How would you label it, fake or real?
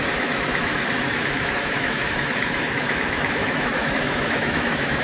fake